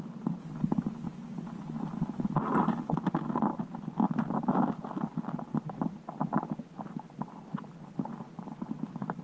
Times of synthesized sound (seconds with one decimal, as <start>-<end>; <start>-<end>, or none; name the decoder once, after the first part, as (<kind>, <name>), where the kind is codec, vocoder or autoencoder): none